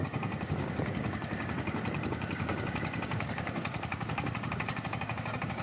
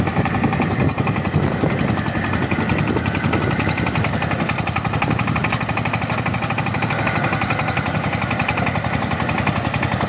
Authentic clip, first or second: second